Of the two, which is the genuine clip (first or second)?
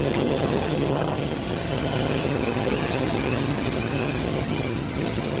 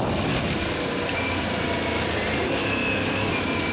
second